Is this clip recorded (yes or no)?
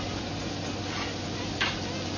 yes